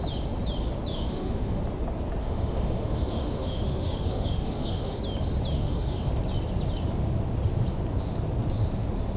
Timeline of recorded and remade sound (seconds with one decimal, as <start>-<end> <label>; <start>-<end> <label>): 0.0-0.9 recorded; 0.9-1.6 remade; 1.6-2.2 recorded; 2.2-5.0 remade; 5.0-5.5 recorded; 5.5-6.1 remade; 6.1-9.2 recorded